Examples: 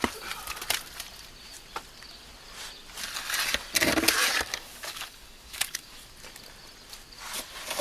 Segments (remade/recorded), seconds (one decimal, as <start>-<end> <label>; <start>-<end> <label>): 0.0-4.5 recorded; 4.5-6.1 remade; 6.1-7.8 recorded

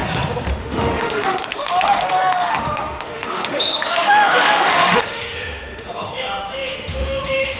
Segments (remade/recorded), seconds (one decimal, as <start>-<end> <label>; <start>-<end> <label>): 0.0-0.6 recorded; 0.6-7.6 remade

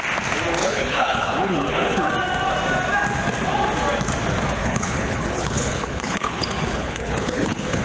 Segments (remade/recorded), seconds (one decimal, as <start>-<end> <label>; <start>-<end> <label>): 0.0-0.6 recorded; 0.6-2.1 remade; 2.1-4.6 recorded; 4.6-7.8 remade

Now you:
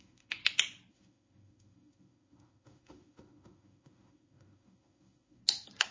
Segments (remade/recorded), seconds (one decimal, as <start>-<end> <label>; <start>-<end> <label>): 0.0-0.4 remade; 0.4-0.9 recorded; 0.9-5.4 remade; 5.4-5.9 recorded

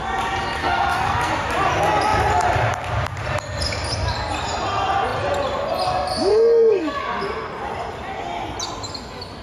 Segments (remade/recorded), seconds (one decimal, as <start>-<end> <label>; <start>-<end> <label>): 0.0-0.6 recorded; 0.6-1.3 remade; 1.3-6.3 recorded; 6.3-7.0 remade; 7.0-9.4 recorded

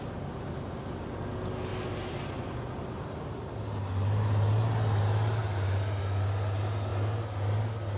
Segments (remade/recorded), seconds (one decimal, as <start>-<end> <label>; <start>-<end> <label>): 0.0-1.7 recorded; 1.7-3.1 remade; 3.1-8.0 recorded

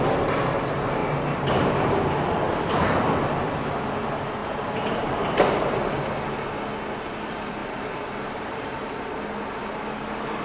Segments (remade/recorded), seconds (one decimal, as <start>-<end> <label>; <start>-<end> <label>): 0.0-1.0 recorded; 1.0-1.7 remade; 1.7-4.4 recorded; 4.4-6.0 remade; 6.0-7.6 recorded; 7.6-8.9 remade; 8.9-10.4 recorded